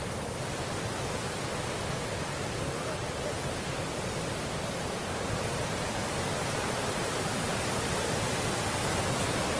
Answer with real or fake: real